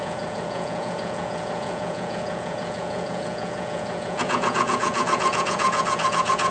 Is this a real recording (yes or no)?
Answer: no